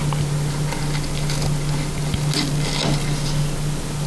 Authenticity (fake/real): real